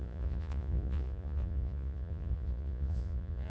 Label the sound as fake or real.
fake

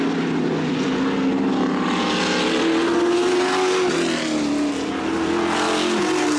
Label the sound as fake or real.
real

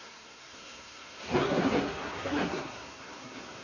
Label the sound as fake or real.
fake